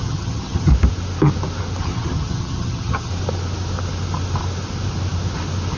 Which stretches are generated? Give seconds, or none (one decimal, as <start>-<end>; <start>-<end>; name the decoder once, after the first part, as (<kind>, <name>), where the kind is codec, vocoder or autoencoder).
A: 0.0-0.7 (vocoder, HiFi-GAN); 1.8-3.1